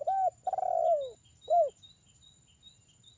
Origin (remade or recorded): recorded